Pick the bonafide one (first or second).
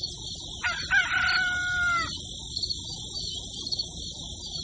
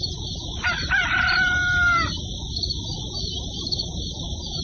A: first